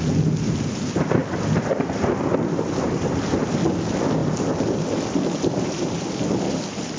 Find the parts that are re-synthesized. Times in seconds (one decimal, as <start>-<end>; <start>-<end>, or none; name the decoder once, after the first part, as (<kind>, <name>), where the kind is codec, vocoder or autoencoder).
1.2-3.2 (vocoder, BigVGAN v2); 4.2-7.0